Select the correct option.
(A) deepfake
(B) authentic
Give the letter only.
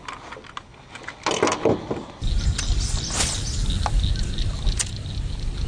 B